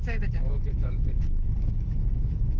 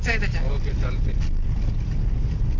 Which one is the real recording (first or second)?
second